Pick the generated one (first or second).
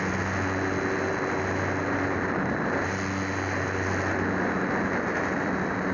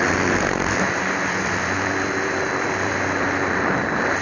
second